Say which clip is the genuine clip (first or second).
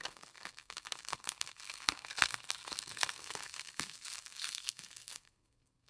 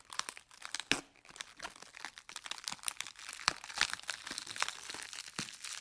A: second